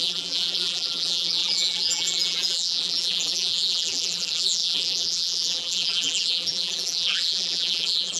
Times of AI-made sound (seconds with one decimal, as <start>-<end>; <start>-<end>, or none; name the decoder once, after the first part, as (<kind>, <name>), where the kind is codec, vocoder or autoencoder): 0.0-8.2 (vocoder, BigVGAN v2)